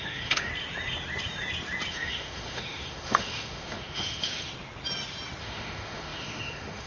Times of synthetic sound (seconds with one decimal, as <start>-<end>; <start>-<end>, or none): 0.0-0.5; 1.9-4.5; 5.4-6.9